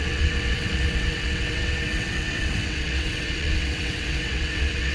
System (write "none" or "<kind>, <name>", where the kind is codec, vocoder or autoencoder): vocoder, WaveNeXt